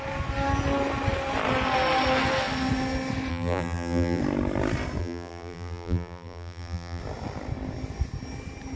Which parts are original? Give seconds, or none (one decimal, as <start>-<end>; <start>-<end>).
0.0-3.3; 4.2-5.0; 7.0-8.8